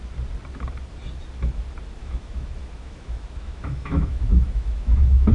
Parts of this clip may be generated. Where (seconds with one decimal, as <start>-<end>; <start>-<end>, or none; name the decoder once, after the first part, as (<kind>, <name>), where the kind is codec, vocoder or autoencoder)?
2.0-5.3 (autoencoder, DAC-VAE)